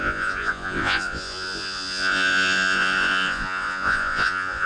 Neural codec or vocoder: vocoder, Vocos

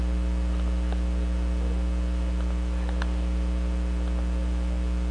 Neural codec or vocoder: none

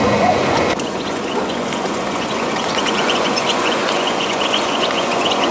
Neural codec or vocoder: vocoder, Vocos